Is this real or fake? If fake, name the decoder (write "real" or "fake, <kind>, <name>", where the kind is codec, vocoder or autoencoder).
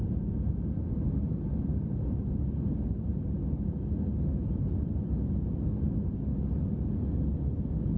real